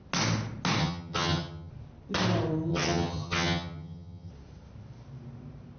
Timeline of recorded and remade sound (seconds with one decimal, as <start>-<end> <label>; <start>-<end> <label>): 0.0-0.8 recorded; 0.8-1.7 remade; 1.7-2.7 recorded; 2.7-4.3 remade; 4.3-5.8 recorded